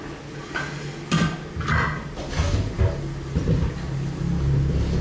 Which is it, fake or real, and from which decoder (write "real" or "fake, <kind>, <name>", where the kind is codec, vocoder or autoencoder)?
real